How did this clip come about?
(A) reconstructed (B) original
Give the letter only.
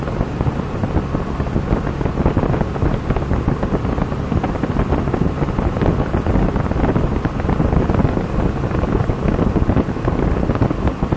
B